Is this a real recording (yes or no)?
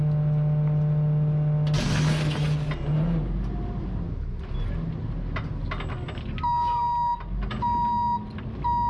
yes